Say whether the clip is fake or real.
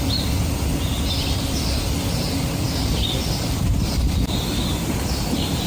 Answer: fake